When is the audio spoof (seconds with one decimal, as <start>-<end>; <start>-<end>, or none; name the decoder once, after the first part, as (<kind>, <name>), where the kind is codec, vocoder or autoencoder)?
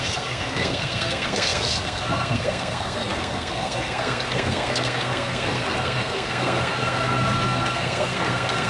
0.0-8.7 (codec, SNAC)